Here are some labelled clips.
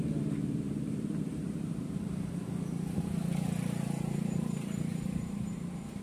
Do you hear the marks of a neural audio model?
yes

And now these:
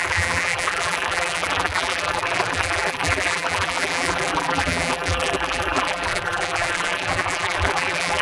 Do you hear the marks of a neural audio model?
yes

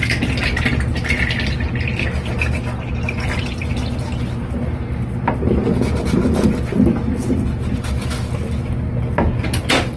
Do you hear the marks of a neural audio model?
no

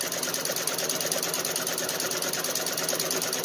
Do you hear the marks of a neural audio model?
no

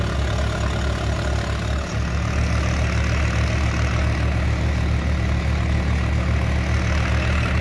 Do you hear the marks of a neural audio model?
no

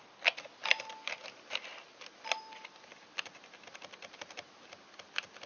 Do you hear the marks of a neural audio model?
no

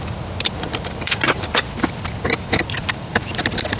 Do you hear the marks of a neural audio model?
yes